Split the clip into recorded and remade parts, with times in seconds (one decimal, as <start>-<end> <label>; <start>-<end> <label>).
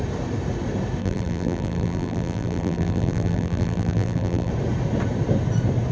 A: 0.0-1.0 recorded; 1.0-4.5 remade; 4.5-5.9 recorded